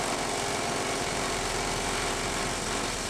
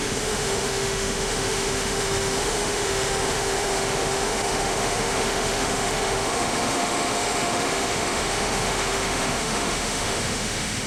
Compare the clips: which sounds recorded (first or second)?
first